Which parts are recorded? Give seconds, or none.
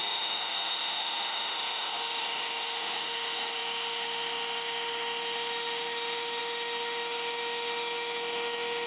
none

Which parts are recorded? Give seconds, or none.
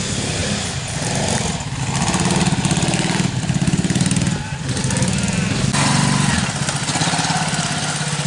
0.0-8.3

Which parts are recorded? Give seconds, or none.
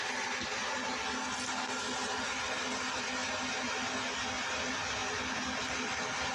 0.0-6.3